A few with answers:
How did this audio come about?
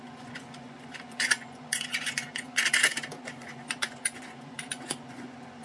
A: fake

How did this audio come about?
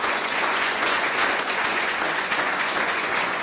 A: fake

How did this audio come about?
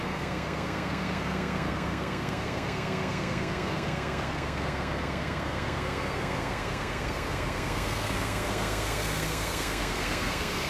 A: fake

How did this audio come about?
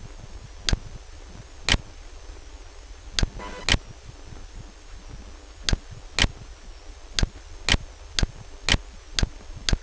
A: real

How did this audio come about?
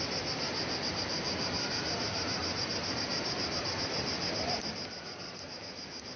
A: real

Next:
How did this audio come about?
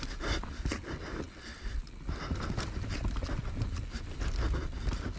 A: real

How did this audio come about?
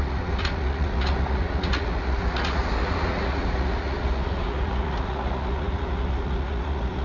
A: fake